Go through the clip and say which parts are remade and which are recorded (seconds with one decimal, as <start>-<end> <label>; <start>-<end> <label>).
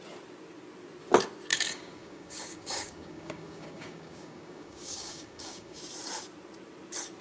0.0-1.5 recorded; 1.5-5.8 remade; 5.8-7.2 recorded